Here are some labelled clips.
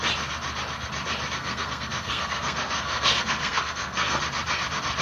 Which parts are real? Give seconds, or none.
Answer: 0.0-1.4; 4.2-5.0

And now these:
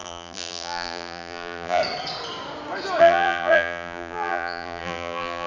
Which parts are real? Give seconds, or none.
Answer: 1.8-3.0

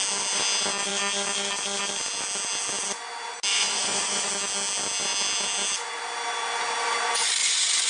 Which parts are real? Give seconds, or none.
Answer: 0.0-3.5; 4.3-7.4